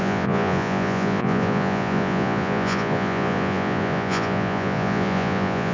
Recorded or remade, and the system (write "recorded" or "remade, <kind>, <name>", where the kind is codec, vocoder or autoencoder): remade, vocoder, Vocos